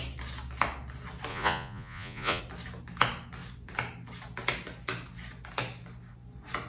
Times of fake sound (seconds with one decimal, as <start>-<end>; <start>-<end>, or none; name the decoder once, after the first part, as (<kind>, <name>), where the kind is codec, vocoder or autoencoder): 1.3-2.4 (vocoder, Vocos)